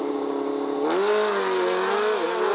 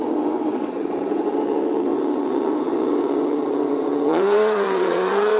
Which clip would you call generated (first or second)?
second